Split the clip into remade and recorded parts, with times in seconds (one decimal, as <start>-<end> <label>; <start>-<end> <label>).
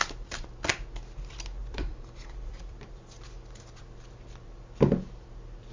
0.0-1.6 recorded; 1.6-3.2 remade; 3.2-5.7 recorded